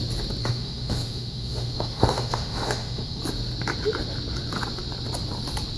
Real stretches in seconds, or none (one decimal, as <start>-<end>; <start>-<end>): 0.0-0.4; 3.2-5.8